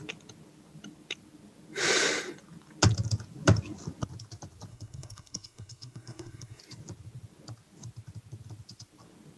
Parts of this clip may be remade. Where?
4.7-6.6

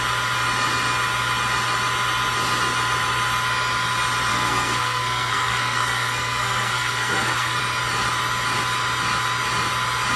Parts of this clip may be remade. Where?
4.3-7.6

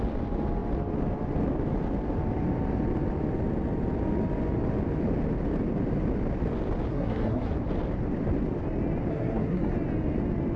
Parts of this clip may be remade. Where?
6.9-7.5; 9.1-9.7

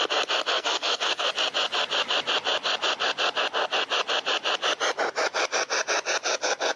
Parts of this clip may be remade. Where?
0.5-1.3